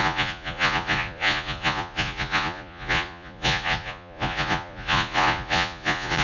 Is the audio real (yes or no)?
no